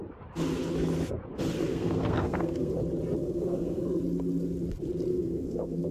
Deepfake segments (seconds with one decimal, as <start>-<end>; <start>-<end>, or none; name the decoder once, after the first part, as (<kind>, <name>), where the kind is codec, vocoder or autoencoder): 1.7-2.7 (codec, SNAC); 3.2-3.8; 5.1-5.9